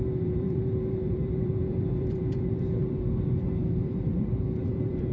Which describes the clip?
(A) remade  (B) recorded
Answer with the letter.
A